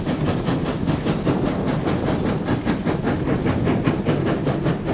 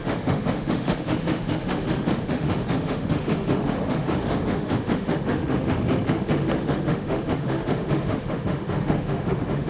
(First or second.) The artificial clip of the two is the second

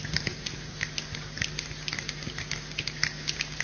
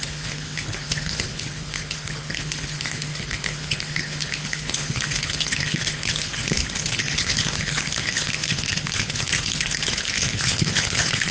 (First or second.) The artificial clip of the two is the second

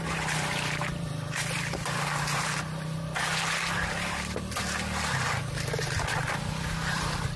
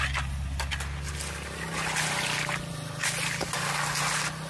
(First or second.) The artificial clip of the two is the first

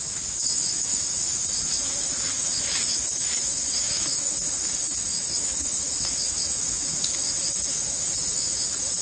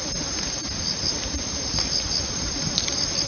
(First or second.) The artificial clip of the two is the first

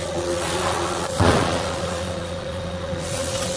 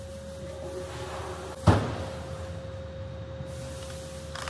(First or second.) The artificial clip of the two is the first